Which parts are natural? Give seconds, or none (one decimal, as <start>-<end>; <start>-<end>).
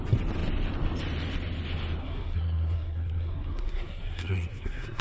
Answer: 0.0-2.0